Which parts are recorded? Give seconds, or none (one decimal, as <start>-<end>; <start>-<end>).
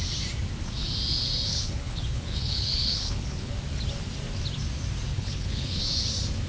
0.0-1.5; 3.5-5.1; 5.8-6.5